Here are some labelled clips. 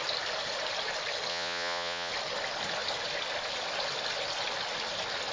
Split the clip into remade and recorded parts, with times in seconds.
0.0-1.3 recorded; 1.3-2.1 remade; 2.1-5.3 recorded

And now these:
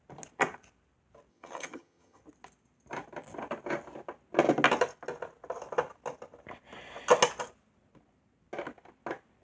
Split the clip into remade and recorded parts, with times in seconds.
0.0-1.3 recorded; 1.3-2.2 remade; 2.2-9.4 recorded

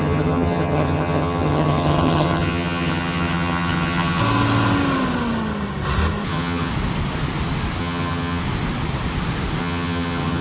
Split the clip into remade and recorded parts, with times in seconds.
0.0-4.2 remade; 4.2-6.3 recorded; 6.3-6.7 remade; 6.7-7.8 recorded; 7.8-8.4 remade; 8.4-9.6 recorded; 9.6-10.4 remade